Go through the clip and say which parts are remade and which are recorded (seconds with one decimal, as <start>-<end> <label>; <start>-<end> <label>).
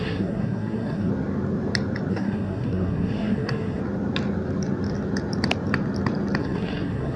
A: 0.0-1.1 remade; 1.1-2.1 recorded; 2.1-3.8 remade; 3.8-6.4 recorded; 6.4-7.2 remade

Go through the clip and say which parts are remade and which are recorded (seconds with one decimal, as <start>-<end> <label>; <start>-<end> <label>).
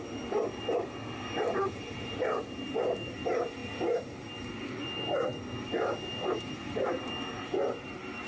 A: 0.0-8.3 recorded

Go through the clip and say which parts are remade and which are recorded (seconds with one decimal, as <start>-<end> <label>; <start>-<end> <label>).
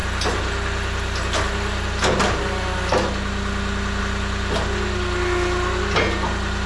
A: 0.0-6.7 recorded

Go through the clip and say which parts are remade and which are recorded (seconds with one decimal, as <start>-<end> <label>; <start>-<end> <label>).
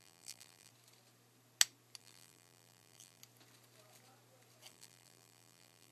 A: 0.0-0.7 remade; 0.7-2.0 recorded; 2.0-3.2 remade; 3.2-4.7 recorded; 4.7-5.9 remade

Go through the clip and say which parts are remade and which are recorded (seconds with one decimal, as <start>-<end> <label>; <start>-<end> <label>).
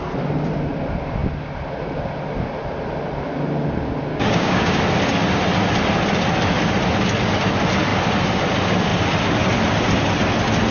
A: 0.0-4.1 recorded; 4.1-4.8 remade; 4.8-10.7 recorded